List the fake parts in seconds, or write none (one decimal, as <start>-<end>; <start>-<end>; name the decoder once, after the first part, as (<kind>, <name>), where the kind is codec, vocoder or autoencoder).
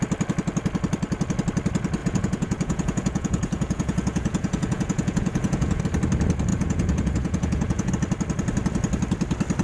2.0-5.8 (vocoder, Vocos); 6.5-7.9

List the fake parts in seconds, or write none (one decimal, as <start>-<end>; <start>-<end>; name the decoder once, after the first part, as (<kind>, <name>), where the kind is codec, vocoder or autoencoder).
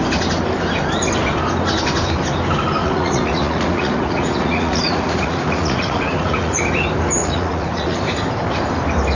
2.8-6.6 (vocoder, Vocos); 7.2-8.0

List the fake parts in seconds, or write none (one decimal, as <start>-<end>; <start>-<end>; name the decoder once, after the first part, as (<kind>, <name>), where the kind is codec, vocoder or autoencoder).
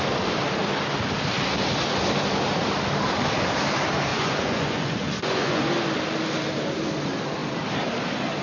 4.1-5.6 (vocoder, Vocos)